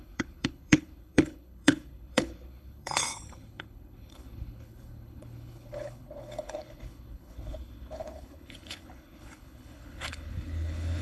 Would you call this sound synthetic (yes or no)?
yes